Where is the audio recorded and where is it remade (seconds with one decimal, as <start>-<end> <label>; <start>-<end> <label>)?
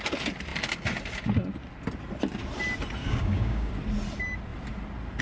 0.0-3.0 recorded; 3.0-3.7 remade; 3.7-5.2 recorded